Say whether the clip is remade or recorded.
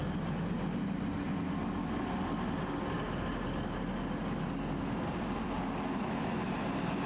recorded